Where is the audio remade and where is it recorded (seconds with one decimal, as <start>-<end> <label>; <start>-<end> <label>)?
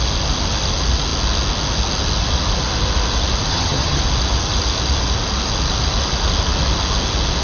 0.0-3.5 recorded; 3.5-4.0 remade; 4.0-7.4 recorded